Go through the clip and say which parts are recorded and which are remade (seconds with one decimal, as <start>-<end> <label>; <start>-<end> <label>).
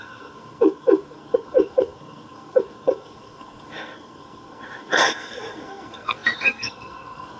0.0-7.4 remade